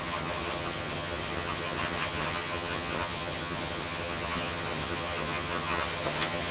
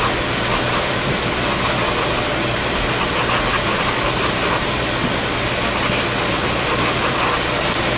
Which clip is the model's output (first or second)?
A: first